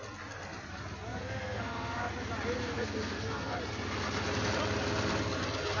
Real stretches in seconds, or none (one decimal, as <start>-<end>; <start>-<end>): 0.0-1.1; 2.1-2.6; 3.6-5.8